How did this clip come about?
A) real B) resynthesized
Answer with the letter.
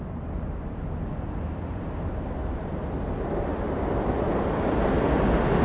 A